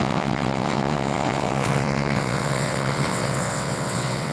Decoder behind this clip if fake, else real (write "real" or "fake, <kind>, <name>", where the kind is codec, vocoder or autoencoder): fake, vocoder, WaveNeXt